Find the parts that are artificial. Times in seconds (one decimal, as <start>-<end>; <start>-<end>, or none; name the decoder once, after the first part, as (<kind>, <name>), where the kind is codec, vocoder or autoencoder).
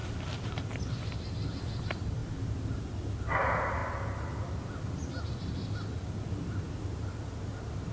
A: 0.0-0.8 (vocoder, BigVGAN v2)